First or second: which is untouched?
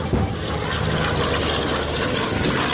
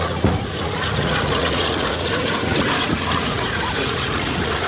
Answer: first